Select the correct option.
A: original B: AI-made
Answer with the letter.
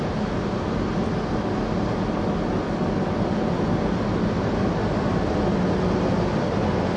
A